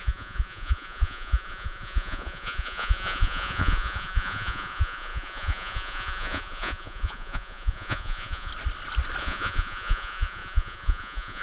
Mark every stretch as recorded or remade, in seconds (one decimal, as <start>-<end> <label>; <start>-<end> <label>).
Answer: 0.0-8.5 remade; 8.5-9.2 recorded; 9.2-11.4 remade